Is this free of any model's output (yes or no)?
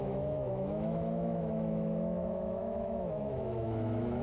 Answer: no